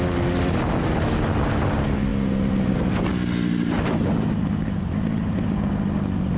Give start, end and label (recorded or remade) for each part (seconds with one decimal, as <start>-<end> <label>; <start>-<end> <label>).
0.0-6.4 recorded